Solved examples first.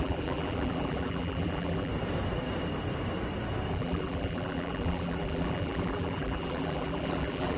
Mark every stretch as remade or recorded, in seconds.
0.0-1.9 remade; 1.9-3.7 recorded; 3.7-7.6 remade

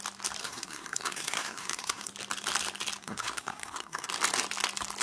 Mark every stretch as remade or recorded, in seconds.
0.0-0.4 recorded; 0.4-2.1 remade; 2.1-3.0 recorded; 3.0-4.1 remade; 4.1-5.0 recorded

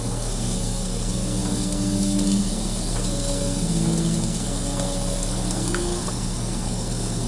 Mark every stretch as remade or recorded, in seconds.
0.0-7.3 remade

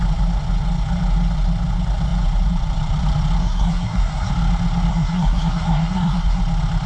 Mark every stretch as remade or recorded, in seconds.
0.0-3.4 recorded; 3.4-4.3 remade; 4.3-4.9 recorded; 4.9-6.4 remade; 6.4-6.9 recorded

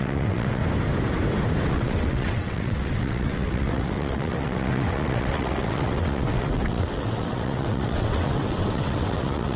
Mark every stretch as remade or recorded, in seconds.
0.0-0.6 remade; 0.6-1.7 recorded; 1.7-9.6 remade

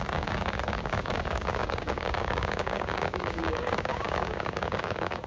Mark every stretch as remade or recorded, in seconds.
0.0-5.3 remade

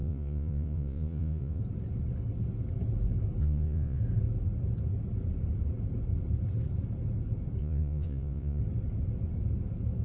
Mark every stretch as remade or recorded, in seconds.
0.0-1.6 remade; 1.6-3.4 recorded; 3.4-4.0 remade; 4.0-7.6 recorded; 7.6-8.6 remade; 8.6-10.0 recorded

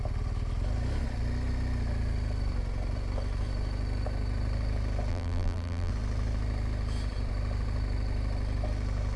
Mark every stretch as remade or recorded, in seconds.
0.0-5.1 recorded; 5.1-5.9 remade; 5.9-9.2 recorded